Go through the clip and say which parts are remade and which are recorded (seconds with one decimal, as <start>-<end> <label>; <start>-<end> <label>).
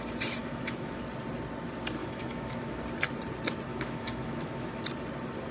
0.0-0.4 recorded; 0.4-1.0 remade; 1.0-2.0 recorded; 2.0-2.8 remade; 2.8-3.7 recorded; 3.7-4.8 remade; 4.8-5.5 recorded